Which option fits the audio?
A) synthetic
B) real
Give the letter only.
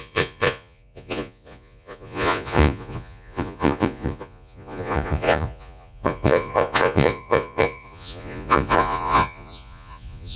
A